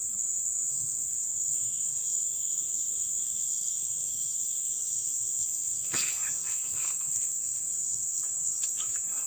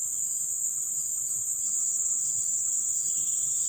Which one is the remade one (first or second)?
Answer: first